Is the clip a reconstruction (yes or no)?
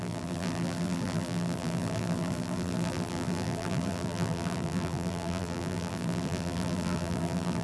yes